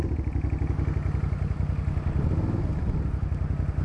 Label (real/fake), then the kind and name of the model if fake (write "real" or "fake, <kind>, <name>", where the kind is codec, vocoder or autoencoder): real